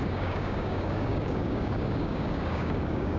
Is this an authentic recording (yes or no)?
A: no